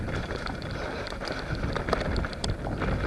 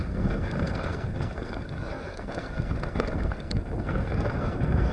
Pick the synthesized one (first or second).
second